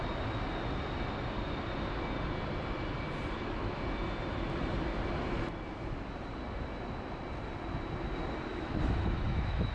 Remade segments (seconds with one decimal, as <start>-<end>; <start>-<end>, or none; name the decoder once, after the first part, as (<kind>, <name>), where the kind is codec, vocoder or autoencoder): 8.5-9.7 (autoencoder, DAC-VAE)